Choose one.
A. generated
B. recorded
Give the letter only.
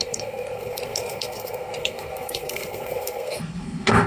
A